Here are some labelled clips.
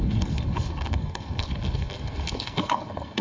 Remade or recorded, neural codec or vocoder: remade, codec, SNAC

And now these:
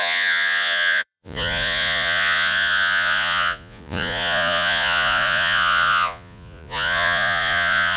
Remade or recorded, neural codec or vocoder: remade, vocoder, Vocos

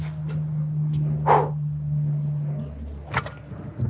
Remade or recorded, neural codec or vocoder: recorded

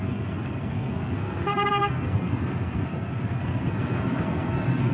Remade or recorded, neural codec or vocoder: remade, codec, SNAC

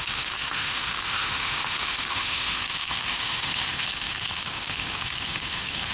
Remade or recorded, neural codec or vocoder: remade, autoencoder, DAC-VAE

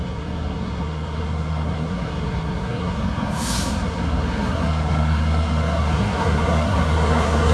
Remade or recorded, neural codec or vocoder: remade, codec, SNAC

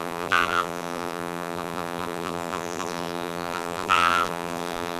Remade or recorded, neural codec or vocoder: remade, vocoder, BigVGAN v2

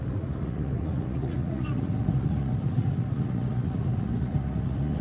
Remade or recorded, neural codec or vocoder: remade, vocoder, Vocos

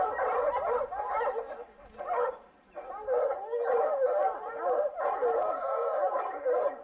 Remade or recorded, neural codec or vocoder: recorded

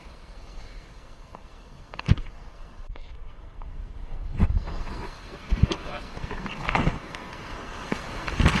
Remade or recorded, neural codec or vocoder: remade, codec, SNAC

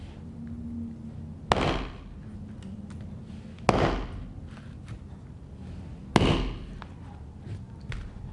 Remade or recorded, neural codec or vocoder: recorded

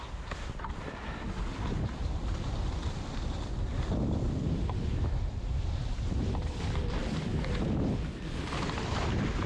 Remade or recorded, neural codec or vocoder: recorded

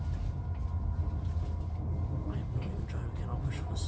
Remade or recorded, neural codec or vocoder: recorded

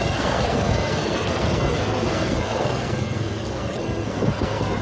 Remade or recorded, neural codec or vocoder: remade, codec, SNAC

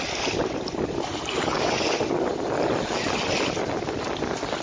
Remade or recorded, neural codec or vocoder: recorded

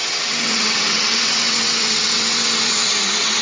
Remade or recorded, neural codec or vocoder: remade, vocoder, WaveNeXt